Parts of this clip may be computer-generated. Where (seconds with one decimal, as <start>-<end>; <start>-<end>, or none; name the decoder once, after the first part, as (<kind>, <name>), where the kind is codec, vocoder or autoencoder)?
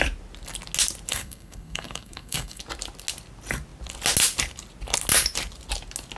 1.1-2.6 (codec, SNAC)